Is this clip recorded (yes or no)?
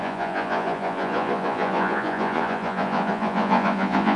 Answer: no